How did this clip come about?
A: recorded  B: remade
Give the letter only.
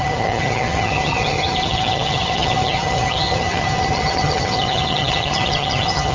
B